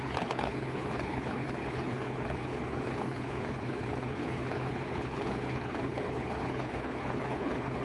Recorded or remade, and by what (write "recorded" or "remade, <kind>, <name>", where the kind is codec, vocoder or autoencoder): remade, codec, HILCodec